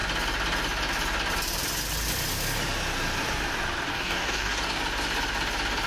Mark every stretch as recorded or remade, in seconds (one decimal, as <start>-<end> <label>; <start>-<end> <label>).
0.0-3.9 recorded; 3.9-4.8 remade; 4.8-5.9 recorded